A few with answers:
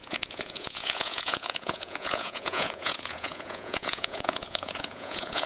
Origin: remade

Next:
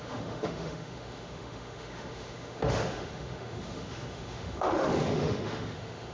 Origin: remade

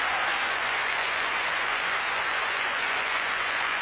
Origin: remade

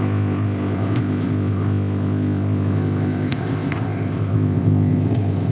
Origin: remade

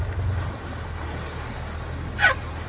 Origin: recorded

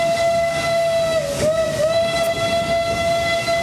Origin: remade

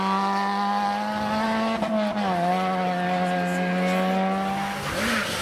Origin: recorded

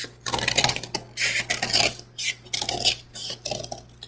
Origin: recorded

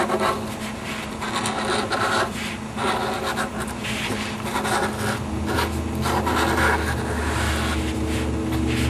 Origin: recorded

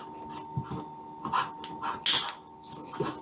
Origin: recorded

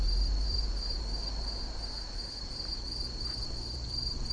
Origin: remade